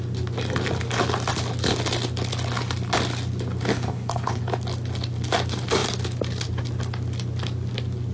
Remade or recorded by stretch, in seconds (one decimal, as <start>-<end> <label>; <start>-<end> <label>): 0.0-3.7 recorded; 3.7-4.4 remade; 4.4-8.1 recorded